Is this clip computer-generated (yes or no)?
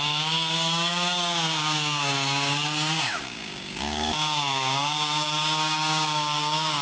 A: yes